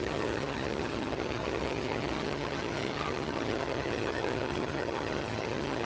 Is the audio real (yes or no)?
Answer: no